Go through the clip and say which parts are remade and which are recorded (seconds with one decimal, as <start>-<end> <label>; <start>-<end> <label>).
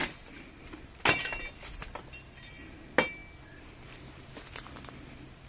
0.0-5.5 recorded